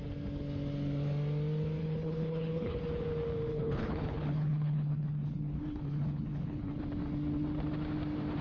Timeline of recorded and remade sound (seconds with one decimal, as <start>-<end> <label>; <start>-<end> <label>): 0.0-1.8 recorded; 1.8-2.8 remade; 2.8-3.5 recorded; 3.5-6.8 remade; 6.8-8.4 recorded